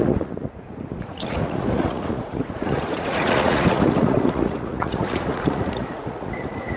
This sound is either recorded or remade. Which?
remade